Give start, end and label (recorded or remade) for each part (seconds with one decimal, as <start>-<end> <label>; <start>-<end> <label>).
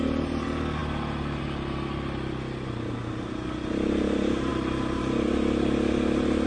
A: 0.0-6.5 recorded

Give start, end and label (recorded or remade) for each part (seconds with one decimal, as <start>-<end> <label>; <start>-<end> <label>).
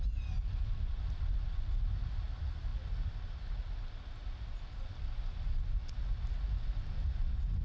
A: 0.0-7.6 recorded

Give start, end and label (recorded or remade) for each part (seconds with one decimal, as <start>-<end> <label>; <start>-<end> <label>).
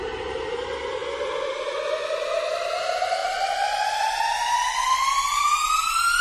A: 0.0-1.0 remade; 1.0-2.7 recorded; 2.7-3.2 remade; 3.2-6.2 recorded